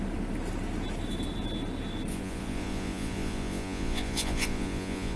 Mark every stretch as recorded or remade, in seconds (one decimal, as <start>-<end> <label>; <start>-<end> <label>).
0.0-2.1 recorded; 2.1-5.2 remade